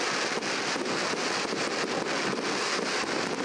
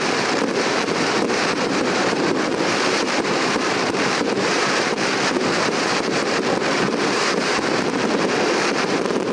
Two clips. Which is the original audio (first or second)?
first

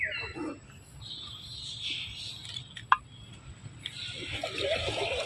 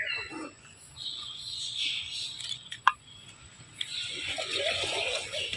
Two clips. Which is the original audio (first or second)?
first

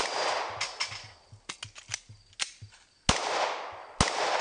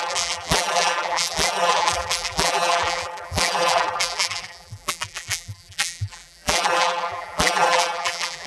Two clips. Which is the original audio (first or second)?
first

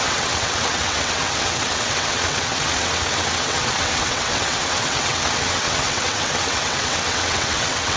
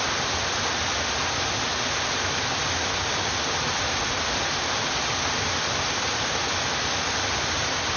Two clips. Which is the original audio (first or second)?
second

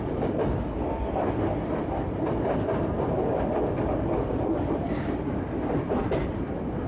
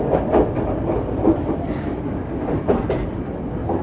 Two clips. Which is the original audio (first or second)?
second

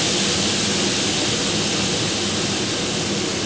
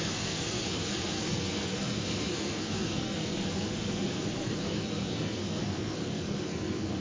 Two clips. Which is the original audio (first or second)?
first